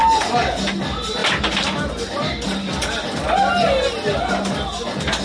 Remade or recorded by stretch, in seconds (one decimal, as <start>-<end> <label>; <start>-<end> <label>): 0.0-5.2 recorded

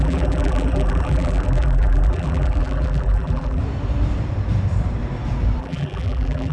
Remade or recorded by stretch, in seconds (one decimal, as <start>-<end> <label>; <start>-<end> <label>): 0.0-3.6 remade; 3.6-5.6 recorded; 5.6-6.5 remade

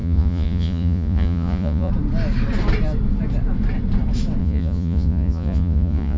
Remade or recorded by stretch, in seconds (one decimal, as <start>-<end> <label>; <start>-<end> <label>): 0.0-1.9 remade; 1.9-4.4 recorded; 4.4-6.2 remade